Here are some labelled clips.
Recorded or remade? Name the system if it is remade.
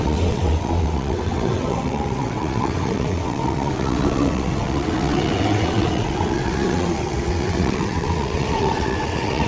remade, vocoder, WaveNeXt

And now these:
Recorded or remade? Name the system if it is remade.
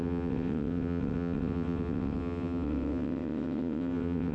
remade, vocoder, WaveNeXt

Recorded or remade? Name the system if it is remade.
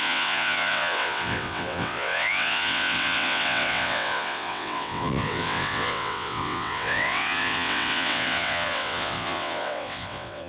remade, vocoder, WaveNeXt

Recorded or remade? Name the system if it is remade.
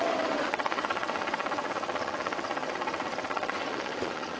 remade, vocoder, WaveNeXt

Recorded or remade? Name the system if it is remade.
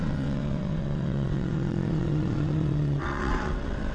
remade, vocoder, WaveNeXt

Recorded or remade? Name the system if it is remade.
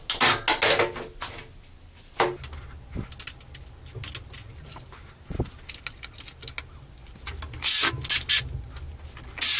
recorded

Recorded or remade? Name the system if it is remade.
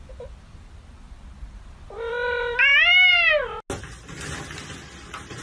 recorded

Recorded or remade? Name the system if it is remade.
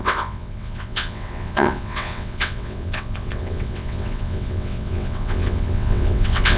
remade, vocoder, WaveNeXt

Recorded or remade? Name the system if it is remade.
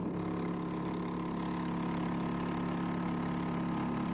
recorded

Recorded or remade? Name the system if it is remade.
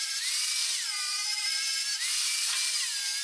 recorded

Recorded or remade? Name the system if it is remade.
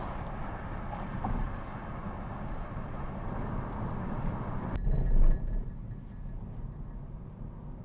recorded